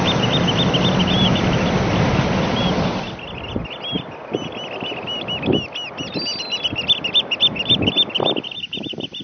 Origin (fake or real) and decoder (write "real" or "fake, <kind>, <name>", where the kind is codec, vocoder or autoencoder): real